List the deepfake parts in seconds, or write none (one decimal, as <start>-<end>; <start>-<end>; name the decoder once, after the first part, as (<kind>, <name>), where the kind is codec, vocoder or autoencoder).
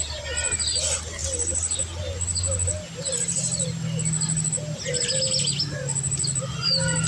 none